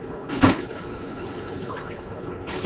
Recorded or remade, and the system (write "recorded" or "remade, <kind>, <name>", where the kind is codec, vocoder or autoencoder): remade, codec, HILCodec